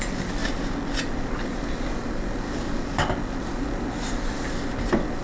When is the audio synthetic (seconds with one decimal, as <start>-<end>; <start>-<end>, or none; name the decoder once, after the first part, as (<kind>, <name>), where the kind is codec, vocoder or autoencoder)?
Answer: none